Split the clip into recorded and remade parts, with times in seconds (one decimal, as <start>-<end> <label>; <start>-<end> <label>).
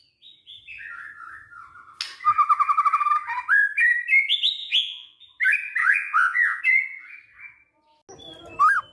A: 0.0-4.6 recorded; 4.6-5.2 remade; 5.2-5.8 recorded; 5.8-6.6 remade; 6.6-8.9 recorded